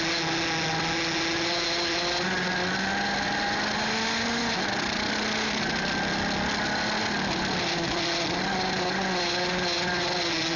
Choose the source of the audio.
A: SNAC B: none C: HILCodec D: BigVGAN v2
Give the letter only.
B